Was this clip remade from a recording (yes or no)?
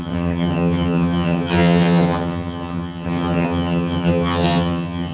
yes